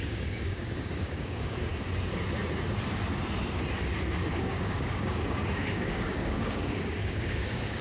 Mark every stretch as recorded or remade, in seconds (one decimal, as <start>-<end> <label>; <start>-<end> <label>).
0.0-1.7 remade; 1.7-4.3 recorded; 4.3-7.8 remade